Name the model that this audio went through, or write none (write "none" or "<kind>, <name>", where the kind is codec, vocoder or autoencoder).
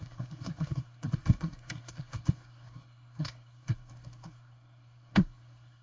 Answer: codec, SNAC